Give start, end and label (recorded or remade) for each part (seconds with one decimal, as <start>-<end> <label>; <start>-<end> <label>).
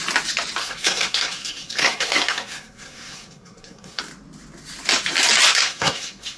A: 0.0-0.6 recorded; 0.6-4.0 remade; 4.0-5.5 recorded; 5.5-6.4 remade